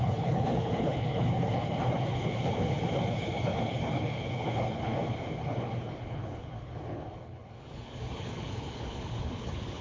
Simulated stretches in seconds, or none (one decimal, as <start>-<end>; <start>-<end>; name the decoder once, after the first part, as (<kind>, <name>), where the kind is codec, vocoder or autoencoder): 0.0-9.8 (codec, HILCodec)